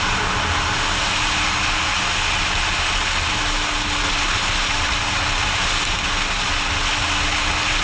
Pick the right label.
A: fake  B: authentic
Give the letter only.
B